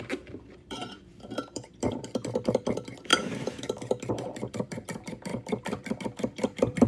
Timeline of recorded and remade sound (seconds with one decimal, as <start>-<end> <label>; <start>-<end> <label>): 0.0-3.1 remade; 3.1-4.1 recorded; 4.1-6.9 remade